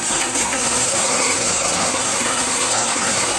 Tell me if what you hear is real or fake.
fake